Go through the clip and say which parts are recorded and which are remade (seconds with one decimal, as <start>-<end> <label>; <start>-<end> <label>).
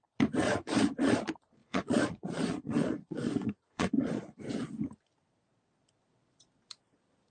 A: 0.0-0.4 recorded; 0.4-1.2 remade; 1.2-1.6 recorded; 1.6-4.4 remade; 4.4-7.3 recorded